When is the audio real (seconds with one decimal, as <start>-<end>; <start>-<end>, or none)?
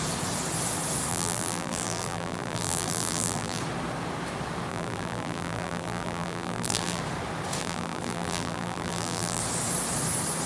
0.0-1.1; 3.6-4.7; 7.0-7.6; 9.4-10.5